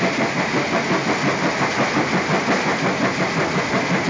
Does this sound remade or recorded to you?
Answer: recorded